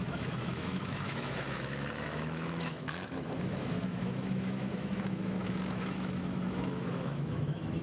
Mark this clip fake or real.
fake